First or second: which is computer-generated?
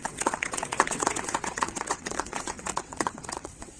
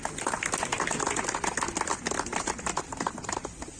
first